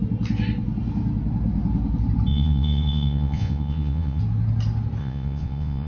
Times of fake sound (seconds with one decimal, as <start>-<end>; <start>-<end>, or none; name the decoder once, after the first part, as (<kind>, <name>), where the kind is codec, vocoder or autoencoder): 2.3-4.2 (vocoder, Vocos); 5.0-5.9